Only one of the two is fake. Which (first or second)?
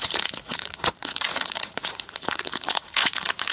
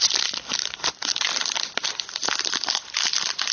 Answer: first